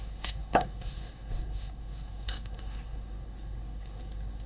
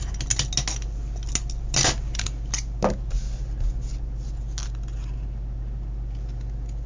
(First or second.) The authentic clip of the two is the second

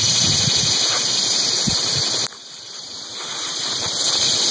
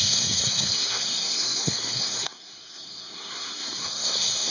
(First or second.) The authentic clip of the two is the first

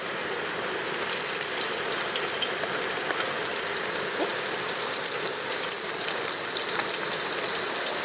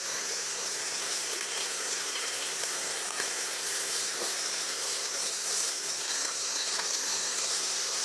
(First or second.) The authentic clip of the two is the first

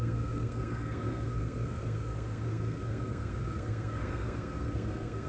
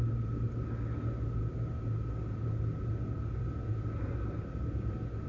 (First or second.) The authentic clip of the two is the second